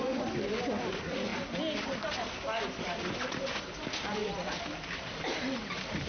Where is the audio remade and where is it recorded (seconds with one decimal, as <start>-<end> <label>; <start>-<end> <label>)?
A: 0.0-6.1 recorded

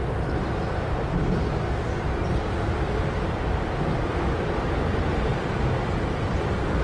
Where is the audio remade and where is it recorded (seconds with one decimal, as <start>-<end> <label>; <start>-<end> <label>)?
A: 0.0-5.1 recorded; 5.1-6.8 remade